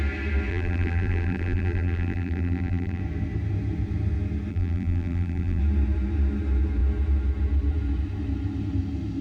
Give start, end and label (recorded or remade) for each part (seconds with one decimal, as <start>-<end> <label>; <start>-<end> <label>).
0.0-0.5 recorded; 0.5-3.0 remade; 3.0-4.5 recorded; 4.5-5.6 remade; 5.6-9.2 recorded